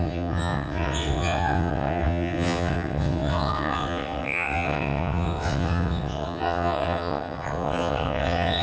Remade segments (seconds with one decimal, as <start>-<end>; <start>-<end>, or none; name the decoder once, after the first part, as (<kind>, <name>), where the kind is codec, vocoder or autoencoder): 0.0-8.6 (vocoder, WaveNeXt)